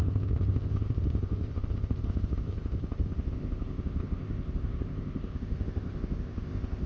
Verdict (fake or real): fake